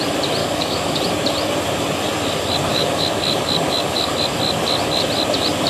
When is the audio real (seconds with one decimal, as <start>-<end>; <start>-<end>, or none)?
0.0-0.4; 1.0-2.7; 4.1-5.7